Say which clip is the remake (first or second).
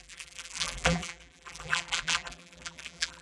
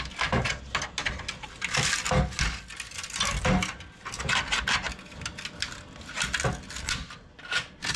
first